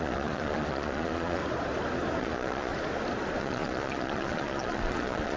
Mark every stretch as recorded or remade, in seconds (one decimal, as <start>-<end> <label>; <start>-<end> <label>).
0.0-1.4 remade; 1.4-2.2 recorded; 2.2-2.7 remade; 2.7-3.4 recorded; 3.4-5.4 remade

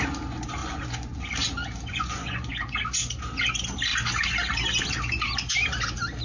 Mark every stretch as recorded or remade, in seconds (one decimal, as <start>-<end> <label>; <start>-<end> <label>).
0.0-0.6 recorded; 0.6-1.2 remade; 1.2-1.9 recorded; 1.9-2.8 remade; 2.8-6.2 recorded

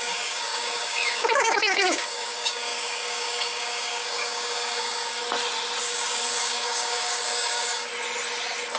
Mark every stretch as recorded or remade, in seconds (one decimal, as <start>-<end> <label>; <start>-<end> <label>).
0.0-5.2 remade; 5.2-5.8 recorded; 5.8-7.9 remade; 7.9-8.8 recorded

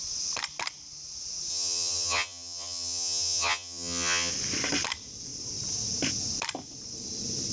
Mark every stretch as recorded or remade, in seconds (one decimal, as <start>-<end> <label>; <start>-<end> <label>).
0.0-1.5 recorded; 1.5-4.3 remade; 4.3-7.5 recorded